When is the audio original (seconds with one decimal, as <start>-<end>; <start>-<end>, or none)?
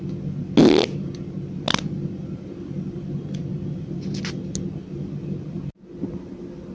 0.0-6.7